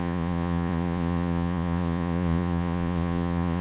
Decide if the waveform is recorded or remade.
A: remade